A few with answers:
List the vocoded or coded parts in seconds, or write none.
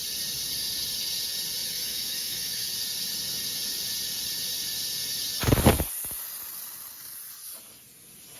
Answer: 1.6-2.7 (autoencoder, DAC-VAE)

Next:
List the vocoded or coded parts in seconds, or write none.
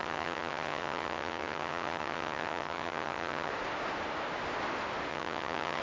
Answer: 0.0-3.5 (vocoder, HiFi-GAN); 5.1-5.8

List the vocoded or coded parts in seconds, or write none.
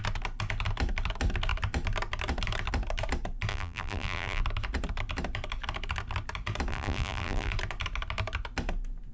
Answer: 3.5-4.4 (vocoder, BigVGAN v2); 6.7-7.5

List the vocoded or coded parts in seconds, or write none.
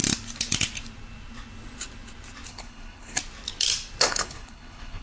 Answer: 2.5-3.2 (codec, HILCodec); 4.0-5.0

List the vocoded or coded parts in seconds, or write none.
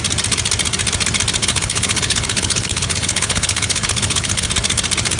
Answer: 1.4-4.5 (codec, HILCodec)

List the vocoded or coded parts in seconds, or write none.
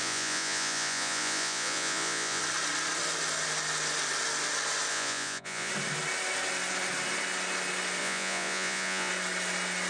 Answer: 0.0-2.4 (vocoder, Vocos); 4.9-5.7; 8.0-9.1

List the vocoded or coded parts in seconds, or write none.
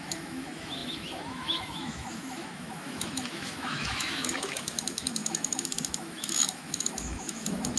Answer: 0.0-7.8 (autoencoder, DAC-VAE)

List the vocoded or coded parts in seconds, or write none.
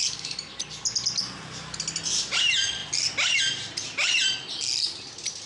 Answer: none